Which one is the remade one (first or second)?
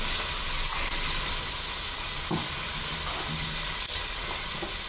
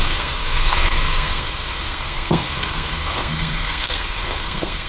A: second